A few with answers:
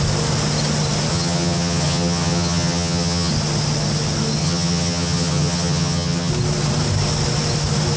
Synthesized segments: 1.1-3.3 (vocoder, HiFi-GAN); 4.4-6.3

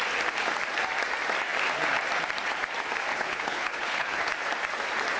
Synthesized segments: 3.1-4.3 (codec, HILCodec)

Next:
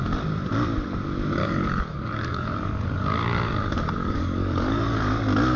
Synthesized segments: 1.4-3.5 (codec, DAC); 4.0-5.0

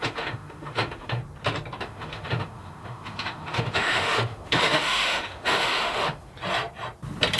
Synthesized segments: 0.0-1.2 (autoencoder, DAC-VAE); 1.8-6.3

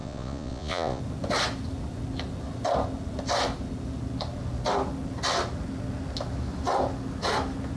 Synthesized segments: 0.0-1.0 (vocoder, Vocos)

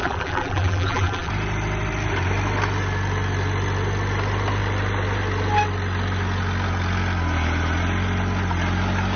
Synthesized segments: 0.0-1.3 (vocoder, BigVGAN v2)